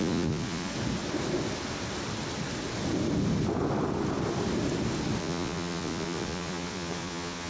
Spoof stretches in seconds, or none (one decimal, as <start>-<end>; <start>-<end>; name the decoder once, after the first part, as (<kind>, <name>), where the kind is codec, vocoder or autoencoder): 0.0-0.7 (vocoder, Vocos); 5.2-7.5